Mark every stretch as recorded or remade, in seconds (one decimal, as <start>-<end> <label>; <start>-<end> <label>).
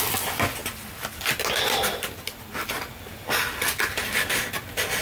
0.0-5.0 recorded